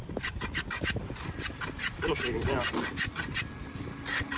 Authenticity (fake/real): real